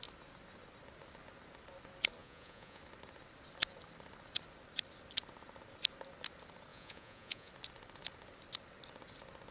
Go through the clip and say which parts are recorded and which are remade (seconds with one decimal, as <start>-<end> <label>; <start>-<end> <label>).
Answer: 0.0-2.2 recorded; 2.2-2.8 remade; 2.8-6.7 recorded; 6.7-7.5 remade; 7.5-9.5 recorded